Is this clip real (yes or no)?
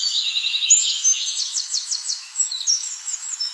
no